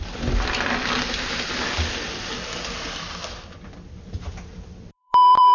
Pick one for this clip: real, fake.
fake